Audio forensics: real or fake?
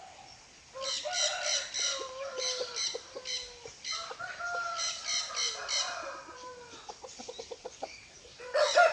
real